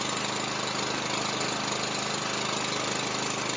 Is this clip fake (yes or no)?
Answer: no